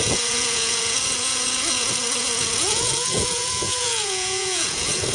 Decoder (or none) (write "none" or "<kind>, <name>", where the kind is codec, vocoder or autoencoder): vocoder, Vocos